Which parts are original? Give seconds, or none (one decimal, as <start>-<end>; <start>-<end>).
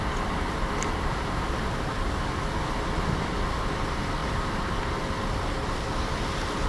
0.0-6.7